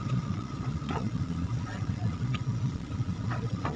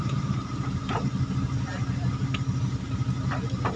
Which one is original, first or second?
second